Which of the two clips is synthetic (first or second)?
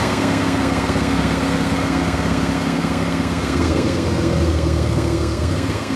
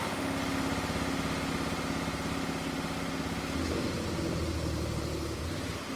first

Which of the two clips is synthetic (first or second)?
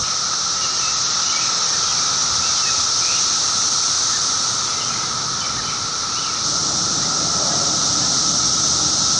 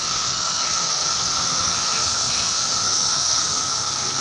second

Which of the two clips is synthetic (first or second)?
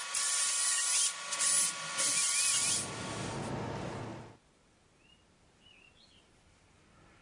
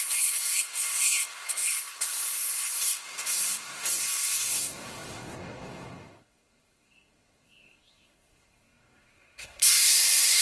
second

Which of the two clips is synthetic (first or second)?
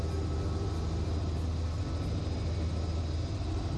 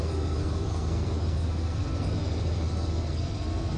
second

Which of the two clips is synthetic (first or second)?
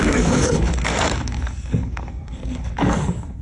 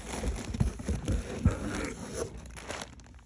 first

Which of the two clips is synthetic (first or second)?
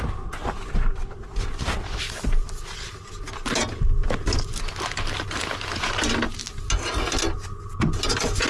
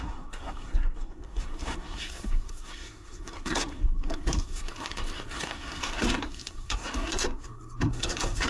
second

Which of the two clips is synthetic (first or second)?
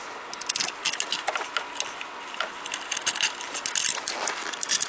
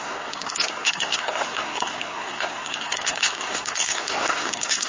second